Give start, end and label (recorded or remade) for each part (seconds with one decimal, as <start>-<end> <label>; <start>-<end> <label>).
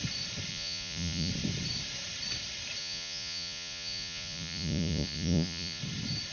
0.0-0.5 recorded; 0.5-1.3 remade; 1.3-2.8 recorded; 2.8-5.8 remade; 5.8-6.3 recorded